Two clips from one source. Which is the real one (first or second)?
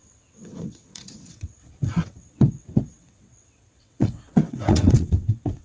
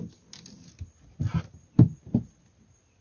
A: second